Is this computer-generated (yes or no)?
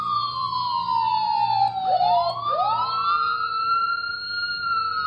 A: yes